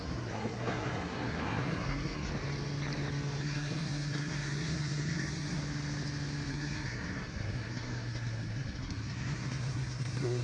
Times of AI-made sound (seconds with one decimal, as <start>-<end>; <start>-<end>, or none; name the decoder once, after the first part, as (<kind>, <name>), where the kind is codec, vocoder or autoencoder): 0.0-2.3 (codec, SNAC); 3.4-5.6; 6.5-10.4